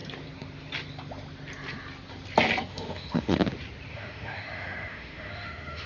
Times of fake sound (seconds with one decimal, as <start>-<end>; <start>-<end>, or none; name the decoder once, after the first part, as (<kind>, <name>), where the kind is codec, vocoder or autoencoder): 2.7-3.4 (autoencoder, DAC-VAE); 3.9-5.9